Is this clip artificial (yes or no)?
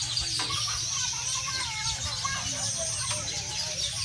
no